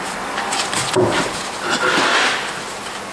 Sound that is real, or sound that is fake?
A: real